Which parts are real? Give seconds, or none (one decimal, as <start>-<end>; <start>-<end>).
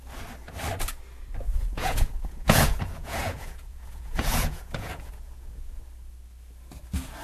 0.0-1.5; 5.8-7.2